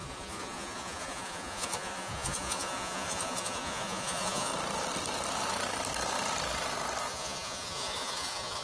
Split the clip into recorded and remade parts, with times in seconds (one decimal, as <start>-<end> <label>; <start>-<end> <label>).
0.0-4.5 remade; 4.5-7.0 recorded; 7.0-8.6 remade